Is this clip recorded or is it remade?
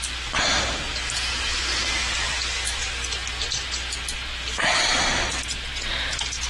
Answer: recorded